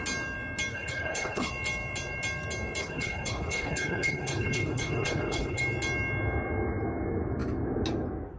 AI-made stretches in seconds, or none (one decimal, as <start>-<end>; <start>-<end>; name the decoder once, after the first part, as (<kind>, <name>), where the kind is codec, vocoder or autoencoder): 0.7-1.5 (codec, HILCodec); 2.8-5.6